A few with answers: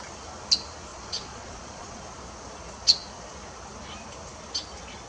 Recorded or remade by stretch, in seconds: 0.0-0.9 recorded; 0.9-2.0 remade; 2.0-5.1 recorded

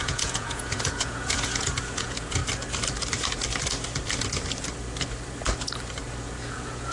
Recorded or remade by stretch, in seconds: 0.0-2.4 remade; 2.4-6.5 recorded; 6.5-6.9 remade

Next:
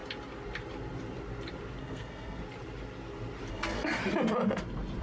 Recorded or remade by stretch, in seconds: 0.0-1.8 recorded; 1.8-2.4 remade; 2.4-3.5 recorded; 3.5-4.0 remade; 4.0-5.0 recorded

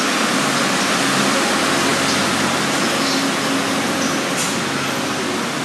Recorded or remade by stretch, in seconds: 0.0-5.6 recorded

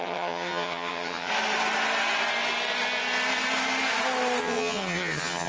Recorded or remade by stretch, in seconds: 0.0-1.3 remade; 1.3-4.4 recorded; 4.4-5.5 remade

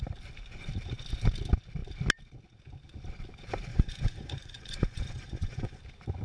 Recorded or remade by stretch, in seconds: 0.0-3.7 recorded; 3.7-5.8 remade; 5.8-6.2 recorded